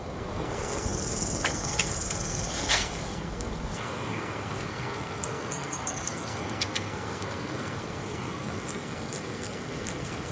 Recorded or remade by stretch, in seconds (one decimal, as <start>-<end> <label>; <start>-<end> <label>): 0.0-10.3 remade